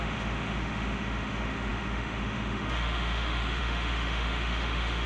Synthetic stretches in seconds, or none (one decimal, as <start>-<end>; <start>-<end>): 0.0-5.1